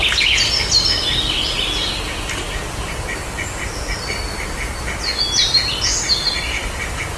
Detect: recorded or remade recorded